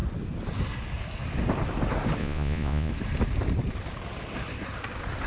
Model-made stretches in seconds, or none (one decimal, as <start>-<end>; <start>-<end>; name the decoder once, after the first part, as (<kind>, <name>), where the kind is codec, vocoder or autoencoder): 2.2-2.9 (vocoder, Vocos)